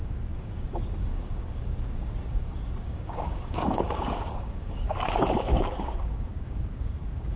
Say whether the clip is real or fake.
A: fake